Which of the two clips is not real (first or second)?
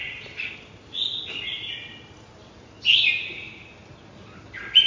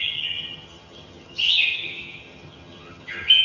second